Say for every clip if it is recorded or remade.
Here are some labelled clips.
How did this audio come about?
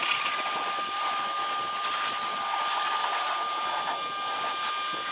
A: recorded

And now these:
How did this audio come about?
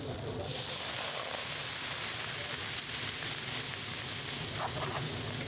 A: recorded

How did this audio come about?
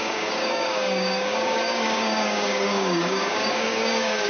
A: remade